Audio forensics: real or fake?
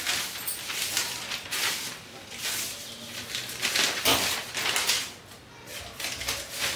real